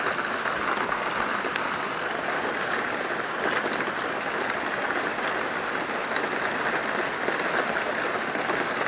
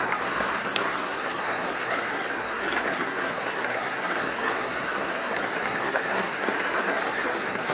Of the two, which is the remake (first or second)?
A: second